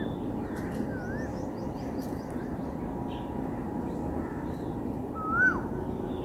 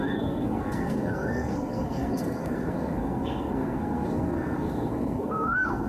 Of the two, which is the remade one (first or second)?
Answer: second